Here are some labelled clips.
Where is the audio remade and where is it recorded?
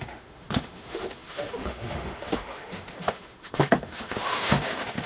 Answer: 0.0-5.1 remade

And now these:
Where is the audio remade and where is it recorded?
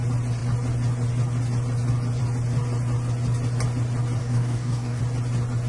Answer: 0.0-4.2 recorded; 4.2-5.0 remade; 5.0-5.7 recorded